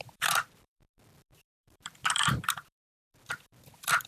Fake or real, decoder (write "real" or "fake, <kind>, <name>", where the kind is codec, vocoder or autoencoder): fake, vocoder, BigVGAN v2